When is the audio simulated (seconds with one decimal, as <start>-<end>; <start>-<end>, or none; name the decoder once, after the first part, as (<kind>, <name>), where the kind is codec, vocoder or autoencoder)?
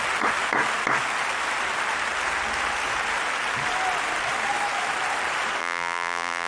5.6-6.5 (vocoder, BigVGAN v2)